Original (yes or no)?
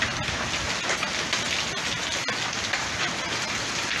yes